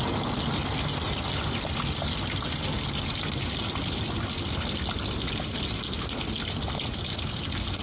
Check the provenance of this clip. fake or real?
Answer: real